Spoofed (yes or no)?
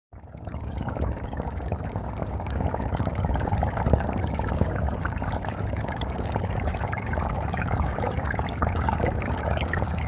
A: yes